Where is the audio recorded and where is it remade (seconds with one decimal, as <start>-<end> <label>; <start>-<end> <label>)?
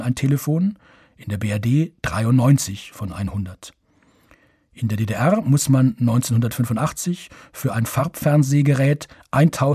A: 0.0-9.7 recorded